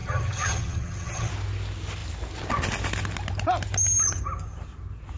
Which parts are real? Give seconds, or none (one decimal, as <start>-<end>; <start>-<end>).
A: 1.3-5.2